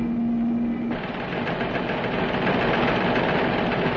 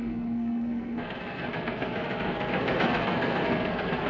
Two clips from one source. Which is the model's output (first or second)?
second